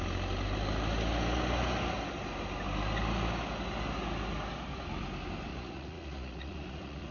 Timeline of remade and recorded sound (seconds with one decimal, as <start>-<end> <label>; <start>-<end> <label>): 0.0-5.5 recorded; 5.5-7.1 remade

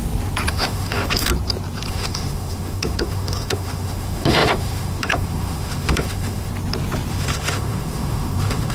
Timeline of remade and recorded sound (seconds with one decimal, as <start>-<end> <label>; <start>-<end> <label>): 0.0-0.5 recorded; 0.5-1.3 remade; 1.3-1.9 recorded; 1.9-6.5 remade; 6.5-7.1 recorded; 7.1-8.7 remade

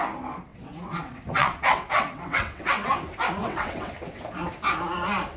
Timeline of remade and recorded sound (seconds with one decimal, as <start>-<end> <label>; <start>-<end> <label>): 0.0-0.5 recorded; 0.5-3.0 remade; 3.0-3.4 recorded; 3.4-3.9 remade; 3.9-5.4 recorded

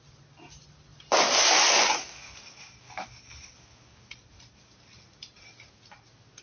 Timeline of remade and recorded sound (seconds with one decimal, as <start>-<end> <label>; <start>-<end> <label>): 0.0-6.4 recorded

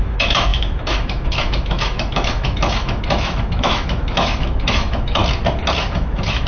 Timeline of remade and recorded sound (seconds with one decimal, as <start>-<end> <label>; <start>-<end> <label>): 0.0-5.2 remade; 5.2-5.8 recorded; 5.8-6.5 remade

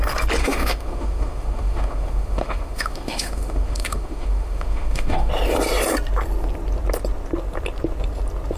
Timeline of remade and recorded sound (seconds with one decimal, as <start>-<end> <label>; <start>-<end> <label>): 0.0-0.4 recorded; 0.4-5.3 remade; 5.3-8.6 recorded